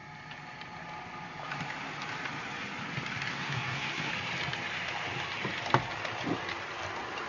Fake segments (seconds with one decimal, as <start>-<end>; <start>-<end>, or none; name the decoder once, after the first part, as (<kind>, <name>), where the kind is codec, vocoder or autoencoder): 3.3-4.1 (codec, SNAC)